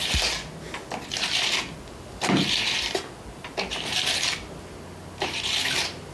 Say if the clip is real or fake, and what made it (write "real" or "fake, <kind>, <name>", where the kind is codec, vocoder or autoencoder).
real